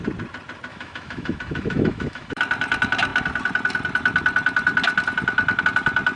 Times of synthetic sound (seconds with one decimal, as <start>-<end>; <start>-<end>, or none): 0.7-2.4

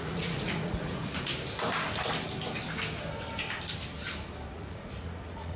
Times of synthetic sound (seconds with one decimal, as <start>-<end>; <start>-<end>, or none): 0.0-1.3; 4.5-5.6